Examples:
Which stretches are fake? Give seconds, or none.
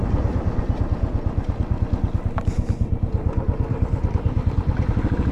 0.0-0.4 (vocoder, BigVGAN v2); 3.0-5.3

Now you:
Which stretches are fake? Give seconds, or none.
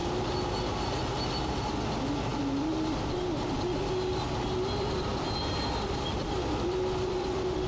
5.1-7.7 (vocoder, BigVGAN v2)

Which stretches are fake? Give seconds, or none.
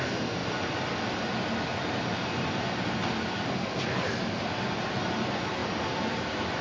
0.4-2.6 (vocoder, BigVGAN v2); 5.6-6.6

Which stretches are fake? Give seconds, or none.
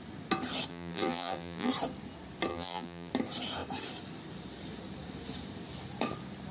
0.7-1.7 (vocoder, BigVGAN v2); 2.5-3.1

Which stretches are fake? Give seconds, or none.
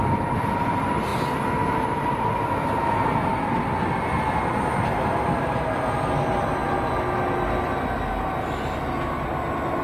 none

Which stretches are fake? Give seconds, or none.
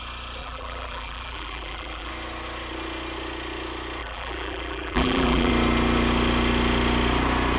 0.4-2.1 (vocoder, BigVGAN v2); 4.0-5.5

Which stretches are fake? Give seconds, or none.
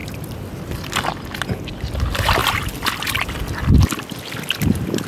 0.0-0.7 (vocoder, BigVGAN v2)